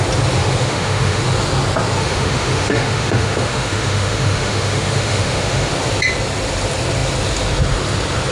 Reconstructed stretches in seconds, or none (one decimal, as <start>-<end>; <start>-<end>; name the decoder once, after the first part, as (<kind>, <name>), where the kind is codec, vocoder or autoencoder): 0.4-1.2 (autoencoder, DAC-VAE); 2.0-5.7